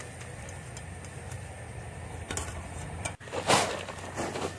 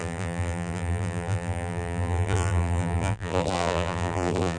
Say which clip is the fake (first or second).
second